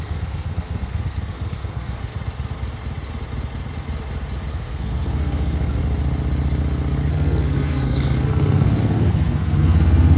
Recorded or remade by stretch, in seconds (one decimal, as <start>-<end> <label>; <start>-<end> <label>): 0.0-2.0 remade; 2.0-4.5 recorded; 4.5-5.8 remade; 5.8-7.1 recorded; 7.1-10.2 remade